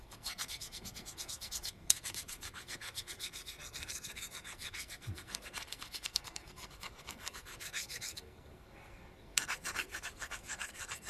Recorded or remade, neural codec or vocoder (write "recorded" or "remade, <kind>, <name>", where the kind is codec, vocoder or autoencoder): remade, codec, SNAC